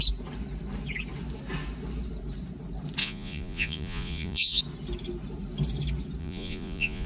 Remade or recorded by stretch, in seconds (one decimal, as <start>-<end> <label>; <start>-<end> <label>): 0.0-3.0 recorded; 3.0-4.6 remade; 4.6-6.2 recorded; 6.2-7.1 remade